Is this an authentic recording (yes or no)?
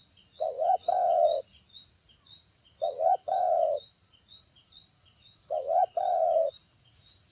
no